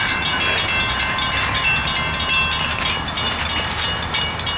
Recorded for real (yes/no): yes